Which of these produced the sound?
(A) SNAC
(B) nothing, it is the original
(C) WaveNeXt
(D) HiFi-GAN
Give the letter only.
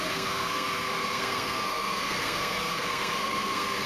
A